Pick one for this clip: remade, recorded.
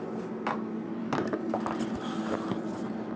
recorded